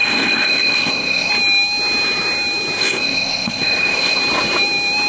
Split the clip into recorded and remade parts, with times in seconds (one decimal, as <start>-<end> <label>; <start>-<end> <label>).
0.0-1.3 remade; 1.3-2.8 recorded; 2.8-4.2 remade; 4.2-5.1 recorded

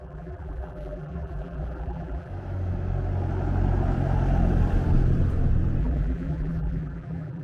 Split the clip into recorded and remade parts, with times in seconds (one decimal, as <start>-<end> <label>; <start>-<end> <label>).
0.0-2.3 remade; 2.3-5.8 recorded; 5.8-7.4 remade

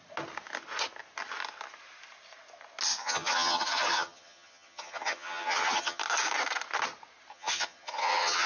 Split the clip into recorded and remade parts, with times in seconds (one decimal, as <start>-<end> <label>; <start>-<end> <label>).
0.0-3.0 recorded; 3.0-6.0 remade; 6.0-7.3 recorded; 7.3-8.5 remade

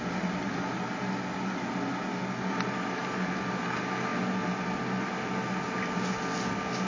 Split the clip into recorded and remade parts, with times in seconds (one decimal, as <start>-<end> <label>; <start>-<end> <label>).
0.0-6.9 recorded

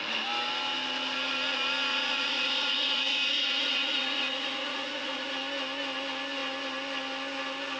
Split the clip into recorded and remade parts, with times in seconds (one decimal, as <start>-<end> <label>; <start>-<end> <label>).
0.0-1.9 recorded; 1.9-5.3 remade; 5.3-7.8 recorded

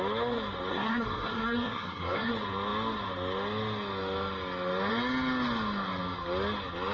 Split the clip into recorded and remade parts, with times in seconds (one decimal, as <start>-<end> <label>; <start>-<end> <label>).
0.0-0.7 recorded; 0.7-2.3 remade; 2.3-6.9 recorded

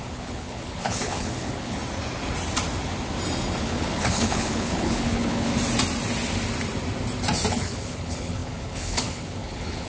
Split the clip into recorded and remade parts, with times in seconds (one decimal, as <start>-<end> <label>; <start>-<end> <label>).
0.0-1.8 remade; 1.8-3.6 recorded; 3.6-5.5 remade; 5.5-7.5 recorded; 7.5-9.9 remade